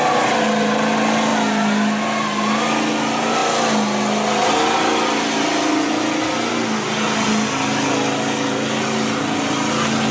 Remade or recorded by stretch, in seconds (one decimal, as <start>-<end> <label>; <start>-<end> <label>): 0.0-10.1 recorded